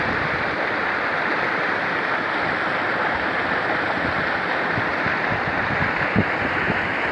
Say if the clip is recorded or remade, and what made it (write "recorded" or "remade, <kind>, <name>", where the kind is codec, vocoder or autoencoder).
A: remade, vocoder, BigVGAN v2